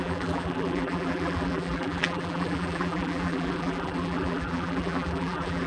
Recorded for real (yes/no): no